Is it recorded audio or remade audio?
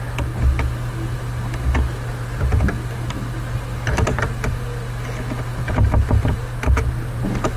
recorded